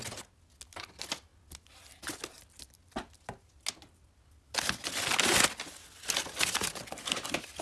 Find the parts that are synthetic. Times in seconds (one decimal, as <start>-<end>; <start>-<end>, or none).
none